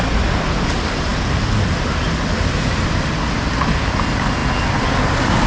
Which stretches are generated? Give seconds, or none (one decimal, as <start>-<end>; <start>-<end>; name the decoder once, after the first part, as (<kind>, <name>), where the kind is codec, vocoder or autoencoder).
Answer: none